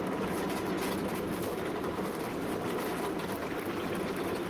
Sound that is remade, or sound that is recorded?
recorded